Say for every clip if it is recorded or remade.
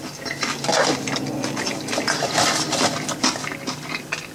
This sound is recorded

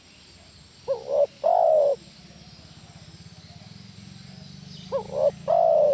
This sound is recorded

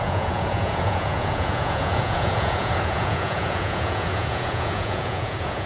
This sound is remade